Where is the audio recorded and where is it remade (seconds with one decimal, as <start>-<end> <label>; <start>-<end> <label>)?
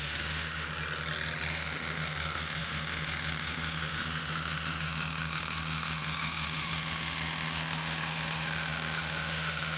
0.0-0.7 remade; 0.7-1.5 recorded; 1.5-9.8 remade